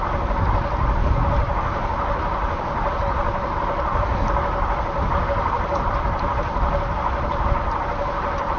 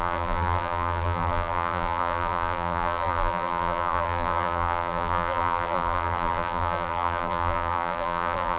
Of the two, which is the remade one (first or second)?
second